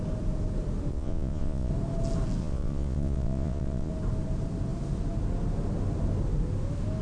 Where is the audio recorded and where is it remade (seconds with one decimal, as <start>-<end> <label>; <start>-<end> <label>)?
0.0-0.9 recorded; 0.9-1.7 remade; 1.7-2.4 recorded; 2.4-3.9 remade; 3.9-7.0 recorded